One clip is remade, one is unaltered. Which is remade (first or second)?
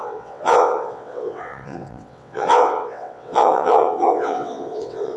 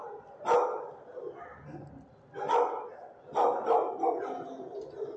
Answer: first